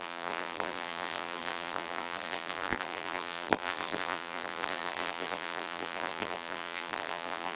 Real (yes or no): no